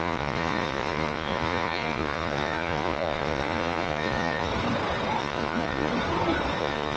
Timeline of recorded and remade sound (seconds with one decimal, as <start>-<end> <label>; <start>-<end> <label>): 0.0-4.5 remade; 4.5-5.2 recorded; 5.2-5.9 remade; 5.9-6.6 recorded; 6.6-7.0 remade